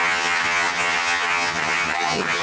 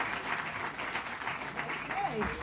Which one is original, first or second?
second